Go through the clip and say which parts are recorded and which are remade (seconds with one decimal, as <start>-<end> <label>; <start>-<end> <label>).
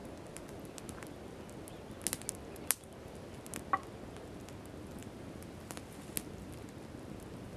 0.0-7.6 recorded